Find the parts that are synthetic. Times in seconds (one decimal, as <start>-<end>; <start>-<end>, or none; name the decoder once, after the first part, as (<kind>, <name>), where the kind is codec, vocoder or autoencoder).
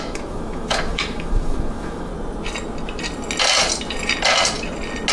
0.0-2.1 (autoencoder, DAC-VAE)